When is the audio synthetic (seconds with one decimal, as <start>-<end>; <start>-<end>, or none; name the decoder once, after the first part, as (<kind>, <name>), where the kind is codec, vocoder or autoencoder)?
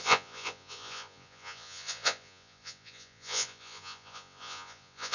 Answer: 0.0-5.1 (vocoder, Vocos)